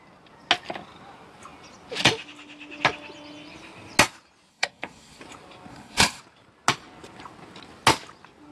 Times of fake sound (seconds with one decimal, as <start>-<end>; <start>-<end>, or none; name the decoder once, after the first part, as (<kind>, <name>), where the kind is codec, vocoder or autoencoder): 4.5-5.2 (codec, SNAC); 5.7-6.2